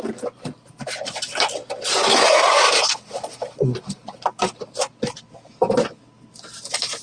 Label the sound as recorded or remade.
recorded